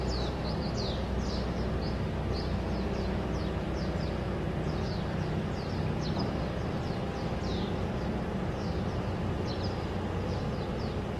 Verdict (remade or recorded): recorded